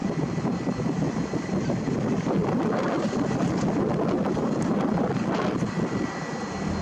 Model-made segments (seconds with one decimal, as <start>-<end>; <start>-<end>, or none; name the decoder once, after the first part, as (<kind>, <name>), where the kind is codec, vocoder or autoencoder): none